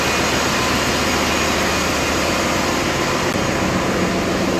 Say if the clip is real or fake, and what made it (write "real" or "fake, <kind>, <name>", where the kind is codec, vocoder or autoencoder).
real